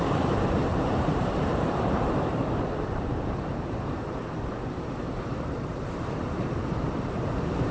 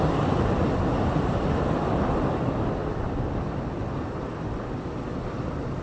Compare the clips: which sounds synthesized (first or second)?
first